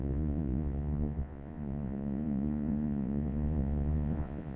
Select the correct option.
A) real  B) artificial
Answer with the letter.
B